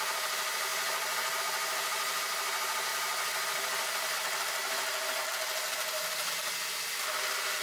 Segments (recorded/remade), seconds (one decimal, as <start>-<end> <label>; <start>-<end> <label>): 0.0-7.6 recorded